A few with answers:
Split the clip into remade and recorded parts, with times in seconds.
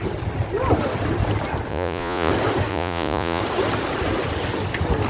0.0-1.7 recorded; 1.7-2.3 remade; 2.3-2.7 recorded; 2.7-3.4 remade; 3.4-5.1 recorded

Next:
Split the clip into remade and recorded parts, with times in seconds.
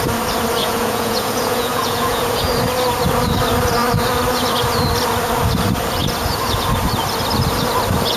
0.0-0.6 recorded; 0.6-2.5 remade; 2.5-8.2 recorded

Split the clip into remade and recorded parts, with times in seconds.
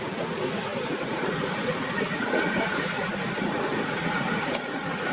0.0-5.1 remade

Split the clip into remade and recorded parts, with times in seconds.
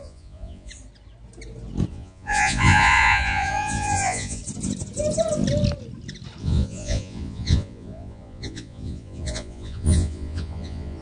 0.0-0.7 remade; 0.7-1.9 recorded; 1.9-4.4 remade; 4.4-6.4 recorded; 6.4-11.0 remade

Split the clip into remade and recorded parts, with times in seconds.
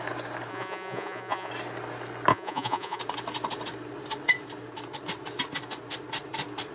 0.0-0.5 recorded; 0.5-1.5 remade; 1.5-2.3 recorded; 2.3-3.0 remade; 3.0-6.7 recorded